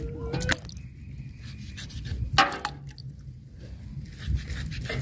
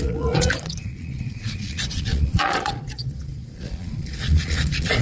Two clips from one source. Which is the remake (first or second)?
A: second